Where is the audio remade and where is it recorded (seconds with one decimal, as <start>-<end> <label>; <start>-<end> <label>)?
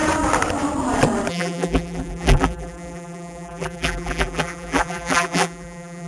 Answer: 0.0-1.3 recorded; 1.3-6.1 remade